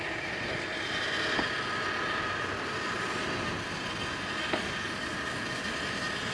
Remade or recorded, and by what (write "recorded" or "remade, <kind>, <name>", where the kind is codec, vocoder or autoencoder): recorded